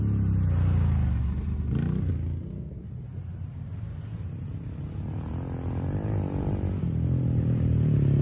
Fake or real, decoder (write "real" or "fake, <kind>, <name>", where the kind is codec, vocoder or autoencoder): real